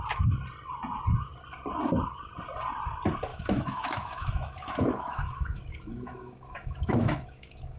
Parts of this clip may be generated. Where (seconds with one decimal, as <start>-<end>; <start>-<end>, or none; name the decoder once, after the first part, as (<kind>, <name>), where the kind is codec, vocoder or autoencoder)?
3.3-7.8 (autoencoder, DAC-VAE)